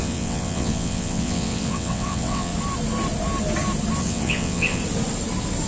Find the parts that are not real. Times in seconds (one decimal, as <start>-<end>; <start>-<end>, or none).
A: 0.0-2.5; 4.0-4.8